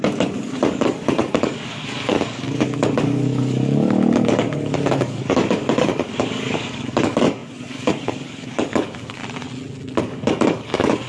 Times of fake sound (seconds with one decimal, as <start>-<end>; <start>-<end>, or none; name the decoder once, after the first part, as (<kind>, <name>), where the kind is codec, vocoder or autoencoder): 0.0-9.2 (codec, DAC); 10.0-11.1